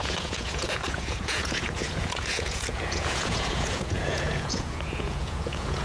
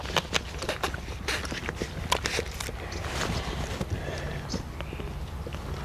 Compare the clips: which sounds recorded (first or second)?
second